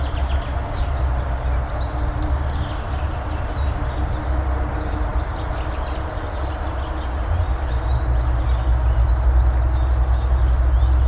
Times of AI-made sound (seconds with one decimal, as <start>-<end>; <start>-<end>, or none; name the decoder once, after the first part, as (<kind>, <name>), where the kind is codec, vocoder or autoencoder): none